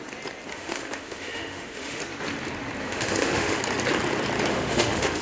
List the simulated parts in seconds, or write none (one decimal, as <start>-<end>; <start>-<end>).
0.5-2.0; 2.8-3.6; 4.5-5.2

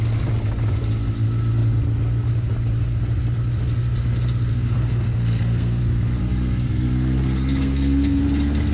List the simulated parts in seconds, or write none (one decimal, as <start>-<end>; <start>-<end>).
4.5-5.8; 6.2-8.2

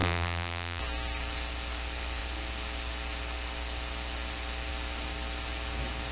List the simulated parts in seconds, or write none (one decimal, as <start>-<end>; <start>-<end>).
0.0-0.8

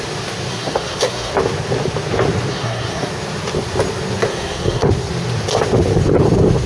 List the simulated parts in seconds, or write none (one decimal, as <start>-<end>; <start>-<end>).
0.5-1.3; 2.5-3.1; 4.3-4.9

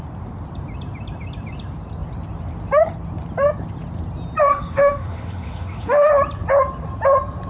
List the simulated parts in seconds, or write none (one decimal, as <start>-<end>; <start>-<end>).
4.5-6.1

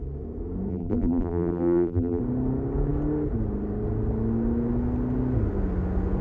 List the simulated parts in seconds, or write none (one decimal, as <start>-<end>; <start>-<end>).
0.7-2.2